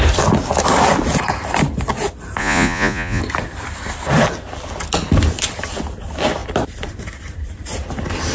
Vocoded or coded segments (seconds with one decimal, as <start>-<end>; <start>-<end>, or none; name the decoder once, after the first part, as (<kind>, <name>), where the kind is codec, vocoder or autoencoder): 2.4-3.2 (vocoder, Vocos)